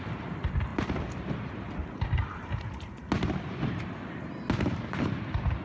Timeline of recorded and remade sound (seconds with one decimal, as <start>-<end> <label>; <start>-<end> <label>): 0.0-5.6 recorded